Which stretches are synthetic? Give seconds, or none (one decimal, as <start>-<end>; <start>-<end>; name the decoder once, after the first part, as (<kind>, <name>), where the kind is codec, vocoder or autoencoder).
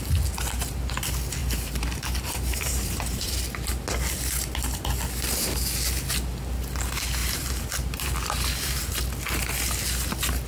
1.4-3.3 (vocoder, BigVGAN v2); 7.2-8.8